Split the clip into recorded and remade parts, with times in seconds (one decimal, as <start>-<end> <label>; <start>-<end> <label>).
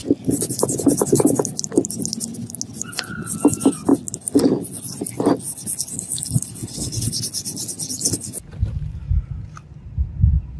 0.0-6.6 recorded; 6.6-7.1 remade; 7.1-10.6 recorded